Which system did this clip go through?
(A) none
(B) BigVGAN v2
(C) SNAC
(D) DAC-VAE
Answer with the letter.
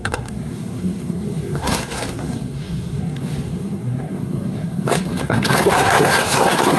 C